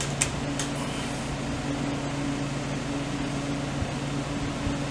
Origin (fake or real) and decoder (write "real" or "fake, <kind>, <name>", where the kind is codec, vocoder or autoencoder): real